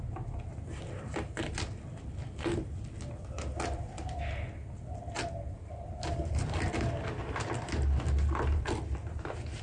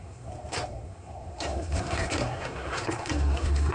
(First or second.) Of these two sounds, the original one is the first